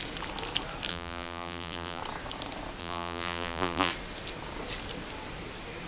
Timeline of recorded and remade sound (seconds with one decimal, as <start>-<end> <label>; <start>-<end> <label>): 0.0-0.9 recorded; 0.9-2.0 remade; 2.0-2.8 recorded; 2.8-3.9 remade; 3.9-5.9 recorded

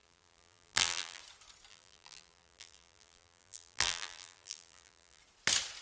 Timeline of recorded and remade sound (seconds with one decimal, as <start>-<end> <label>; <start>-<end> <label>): 0.0-1.2 remade; 1.2-1.7 recorded; 1.7-5.2 remade; 5.2-5.8 recorded